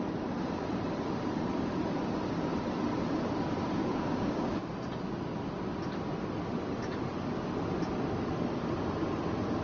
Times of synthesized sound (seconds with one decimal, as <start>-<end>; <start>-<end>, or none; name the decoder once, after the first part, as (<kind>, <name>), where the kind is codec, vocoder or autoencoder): 3.8-4.7 (codec, DAC)

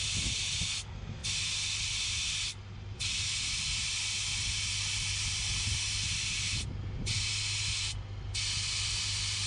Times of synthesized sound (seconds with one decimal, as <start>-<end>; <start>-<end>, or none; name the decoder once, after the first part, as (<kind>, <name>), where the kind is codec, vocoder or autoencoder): none

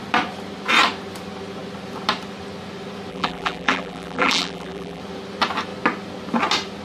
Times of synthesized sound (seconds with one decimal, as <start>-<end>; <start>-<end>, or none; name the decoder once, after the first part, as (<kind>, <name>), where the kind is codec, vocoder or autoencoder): 3.1-5.0 (vocoder, BigVGAN v2)

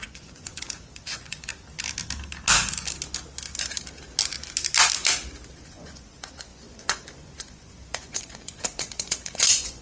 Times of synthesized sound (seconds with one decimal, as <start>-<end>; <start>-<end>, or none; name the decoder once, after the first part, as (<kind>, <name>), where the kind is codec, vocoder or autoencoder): 0.0-1.5 (vocoder, Vocos); 5.6-9.8

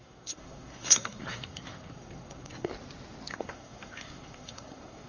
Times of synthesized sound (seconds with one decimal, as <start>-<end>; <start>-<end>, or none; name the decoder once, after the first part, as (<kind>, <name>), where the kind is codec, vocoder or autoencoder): 0.0-2.7 (codec, SNAC); 3.3-5.1

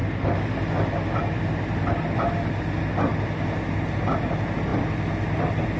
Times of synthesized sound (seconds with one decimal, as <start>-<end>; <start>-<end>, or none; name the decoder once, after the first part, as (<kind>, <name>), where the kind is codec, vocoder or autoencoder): none

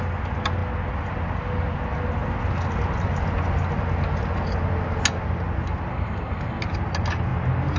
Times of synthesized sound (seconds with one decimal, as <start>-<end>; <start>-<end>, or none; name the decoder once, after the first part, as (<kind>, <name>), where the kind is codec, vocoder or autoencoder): 5.9-6.6 (codec, SNAC)